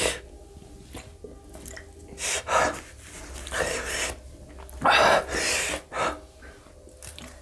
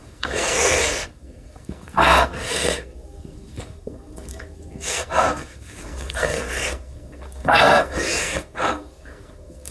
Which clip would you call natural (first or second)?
first